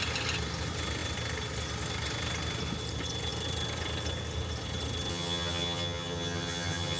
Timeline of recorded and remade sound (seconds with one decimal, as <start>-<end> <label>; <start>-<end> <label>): 0.0-5.1 recorded; 5.1-7.0 remade